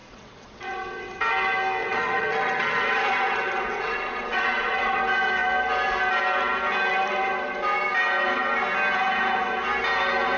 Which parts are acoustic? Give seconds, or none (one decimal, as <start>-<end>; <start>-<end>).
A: 1.2-1.8; 5.0-10.4